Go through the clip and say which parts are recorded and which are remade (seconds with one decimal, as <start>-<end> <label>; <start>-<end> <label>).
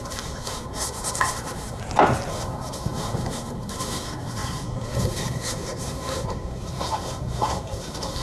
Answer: 0.0-1.8 remade; 1.8-2.3 recorded; 2.3-8.2 remade